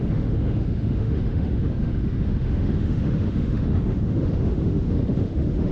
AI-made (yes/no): yes